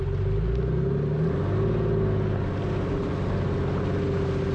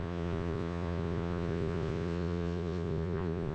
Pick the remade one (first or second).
second